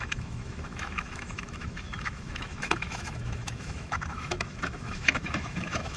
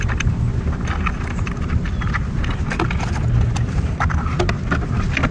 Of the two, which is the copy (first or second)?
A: first